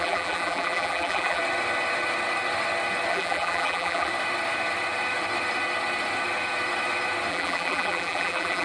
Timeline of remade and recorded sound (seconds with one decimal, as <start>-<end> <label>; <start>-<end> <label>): 0.0-1.4 remade; 1.4-3.1 recorded; 3.1-4.1 remade; 4.1-7.3 recorded; 7.3-8.6 remade